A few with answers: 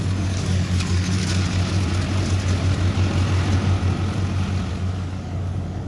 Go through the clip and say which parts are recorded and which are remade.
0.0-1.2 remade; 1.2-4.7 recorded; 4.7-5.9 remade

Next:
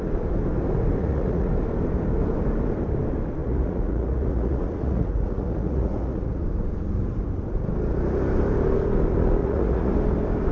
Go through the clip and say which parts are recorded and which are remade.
0.0-1.0 recorded; 1.0-1.5 remade; 1.5-3.4 recorded; 3.4-6.4 remade; 6.4-9.4 recorded; 9.4-9.9 remade; 9.9-10.5 recorded